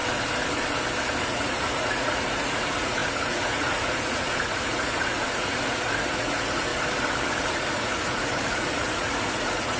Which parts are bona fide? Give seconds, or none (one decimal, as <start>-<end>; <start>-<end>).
0.0-1.2; 6.7-7.4